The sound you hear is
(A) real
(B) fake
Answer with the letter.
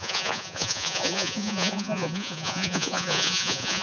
B